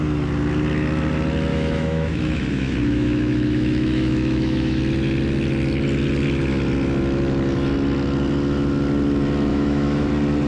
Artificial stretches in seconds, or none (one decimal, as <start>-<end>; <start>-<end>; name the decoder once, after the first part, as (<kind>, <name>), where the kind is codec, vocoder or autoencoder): 1.5-4.8 (autoencoder, DAC-VAE); 9.5-10.1

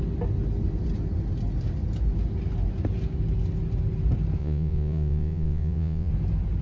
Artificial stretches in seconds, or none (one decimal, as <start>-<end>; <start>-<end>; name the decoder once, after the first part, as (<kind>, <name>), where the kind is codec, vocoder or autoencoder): 4.4-6.1 (vocoder, Vocos)

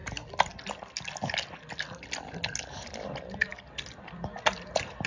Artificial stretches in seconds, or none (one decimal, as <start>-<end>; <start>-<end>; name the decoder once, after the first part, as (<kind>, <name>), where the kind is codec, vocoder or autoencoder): none

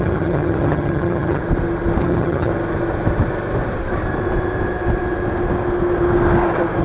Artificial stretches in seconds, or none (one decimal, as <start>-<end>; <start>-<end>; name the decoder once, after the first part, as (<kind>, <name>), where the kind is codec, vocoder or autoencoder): 0.0-1.4 (vocoder, HiFi-GAN); 2.0-2.5

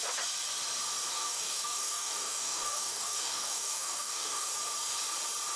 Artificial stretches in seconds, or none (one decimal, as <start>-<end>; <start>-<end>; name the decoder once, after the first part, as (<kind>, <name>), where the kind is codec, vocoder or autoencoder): 1.1-4.5 (codec, DAC)